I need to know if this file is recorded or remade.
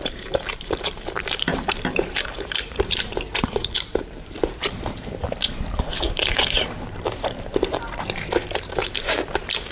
remade